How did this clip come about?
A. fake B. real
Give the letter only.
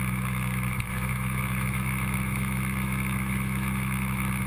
A